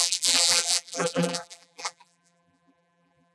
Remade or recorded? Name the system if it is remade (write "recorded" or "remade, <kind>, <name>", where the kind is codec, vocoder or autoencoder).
remade, vocoder, BigVGAN v2